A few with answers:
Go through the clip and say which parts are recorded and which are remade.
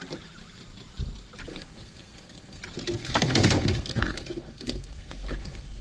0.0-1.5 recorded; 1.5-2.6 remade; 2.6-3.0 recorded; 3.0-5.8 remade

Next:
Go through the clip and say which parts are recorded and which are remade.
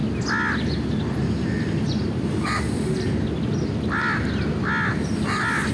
0.0-5.7 recorded